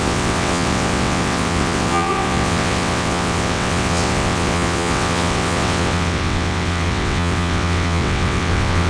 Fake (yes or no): yes